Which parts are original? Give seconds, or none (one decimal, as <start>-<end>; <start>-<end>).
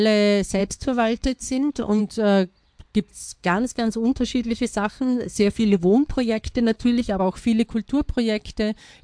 0.0-0.6; 2.0-3.1; 7.2-9.0